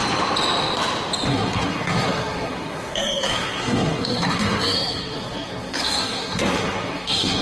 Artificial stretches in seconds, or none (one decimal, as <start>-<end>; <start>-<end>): 1.3-7.4

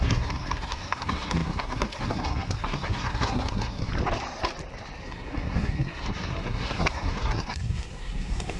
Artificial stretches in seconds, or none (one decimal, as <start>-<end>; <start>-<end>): 0.0-3.9; 5.0-8.6

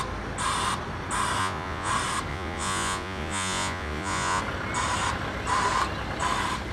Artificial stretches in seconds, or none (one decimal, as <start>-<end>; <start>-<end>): 1.4-1.9; 2.3-4.4

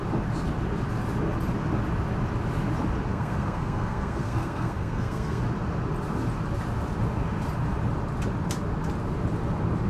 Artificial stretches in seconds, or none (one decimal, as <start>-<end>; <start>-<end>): 3.1-5.4

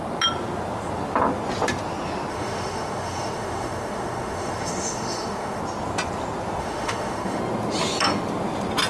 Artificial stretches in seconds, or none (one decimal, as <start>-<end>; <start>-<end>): 2.3-5.6; 6.6-7.4

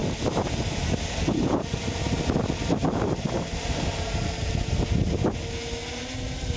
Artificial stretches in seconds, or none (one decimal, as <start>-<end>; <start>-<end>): none

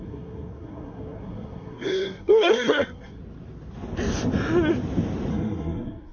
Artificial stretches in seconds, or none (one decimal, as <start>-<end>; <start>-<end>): 0.0-3.2; 5.3-6.1

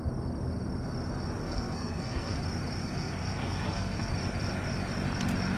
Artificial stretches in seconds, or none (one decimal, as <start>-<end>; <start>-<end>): 1.4-2.4; 2.8-4.1